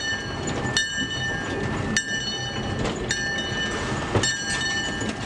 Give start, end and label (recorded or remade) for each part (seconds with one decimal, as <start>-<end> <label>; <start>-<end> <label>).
0.0-5.3 recorded